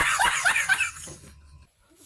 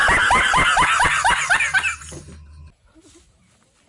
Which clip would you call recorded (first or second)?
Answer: second